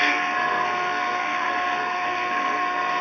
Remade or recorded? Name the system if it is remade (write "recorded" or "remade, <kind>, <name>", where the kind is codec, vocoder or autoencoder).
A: remade, codec, SNAC